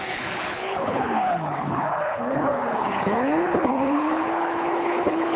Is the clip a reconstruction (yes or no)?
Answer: yes